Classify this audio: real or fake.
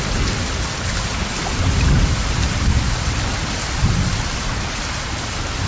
real